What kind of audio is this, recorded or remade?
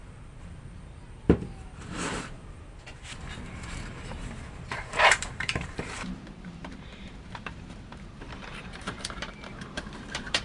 remade